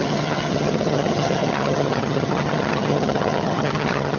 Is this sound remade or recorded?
remade